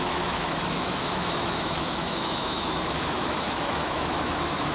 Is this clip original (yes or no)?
no